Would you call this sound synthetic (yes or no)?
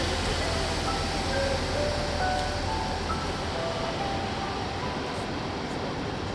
no